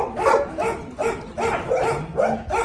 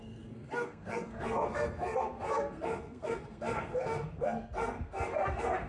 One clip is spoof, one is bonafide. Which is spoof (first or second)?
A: second